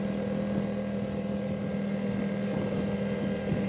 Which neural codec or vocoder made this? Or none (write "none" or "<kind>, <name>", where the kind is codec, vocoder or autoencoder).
none